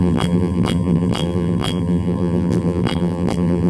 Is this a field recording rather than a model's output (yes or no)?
no